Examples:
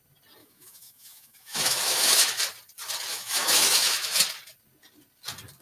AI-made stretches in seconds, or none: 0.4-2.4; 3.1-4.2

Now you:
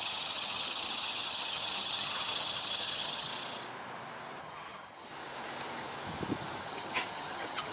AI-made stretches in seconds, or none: 0.0-3.3; 4.4-5.1; 6.6-7.7

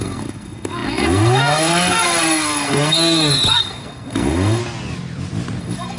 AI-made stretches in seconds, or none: 0.0-4.6; 5.6-6.0

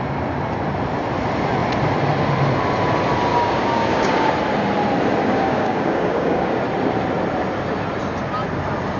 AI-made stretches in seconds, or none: 3.3-4.3; 5.3-6.6